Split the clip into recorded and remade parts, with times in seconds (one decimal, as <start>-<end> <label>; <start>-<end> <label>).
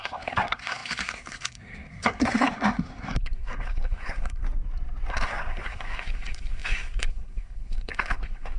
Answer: 0.0-4.4 remade; 4.4-5.1 recorded; 5.1-8.6 remade